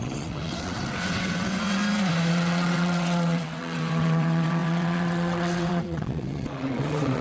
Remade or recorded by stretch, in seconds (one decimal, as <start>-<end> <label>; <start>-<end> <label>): 0.0-1.8 remade; 1.8-2.3 recorded; 2.3-7.2 remade